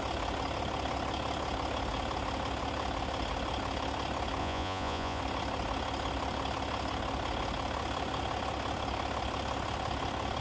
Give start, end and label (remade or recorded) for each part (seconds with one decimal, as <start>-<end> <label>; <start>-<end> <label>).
0.0-4.4 recorded; 4.4-5.2 remade; 5.2-10.4 recorded